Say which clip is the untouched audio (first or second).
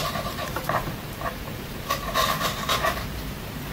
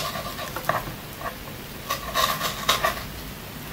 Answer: second